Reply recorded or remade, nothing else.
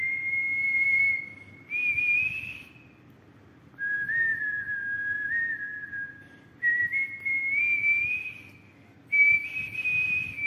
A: recorded